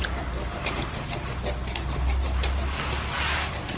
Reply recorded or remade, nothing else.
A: recorded